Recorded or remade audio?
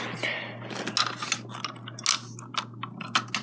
recorded